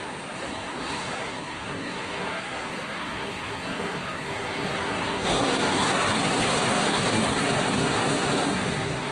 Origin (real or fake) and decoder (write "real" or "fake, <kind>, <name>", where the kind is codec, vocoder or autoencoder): fake, codec, SNAC